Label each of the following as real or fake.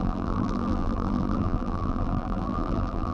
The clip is fake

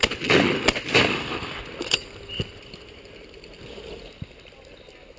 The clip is fake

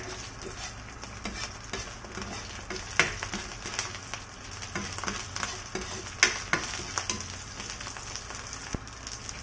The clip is real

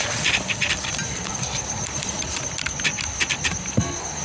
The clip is fake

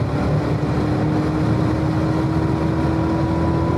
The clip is real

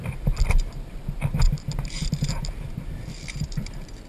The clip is fake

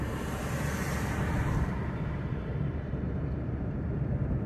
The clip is fake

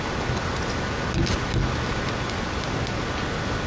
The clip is real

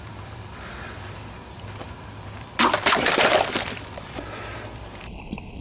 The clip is fake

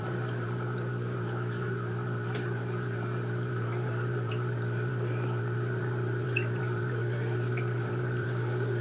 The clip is fake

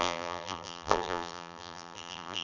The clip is fake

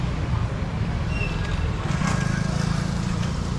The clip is fake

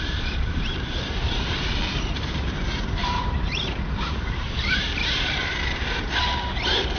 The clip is fake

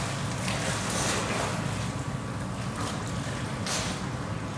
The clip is real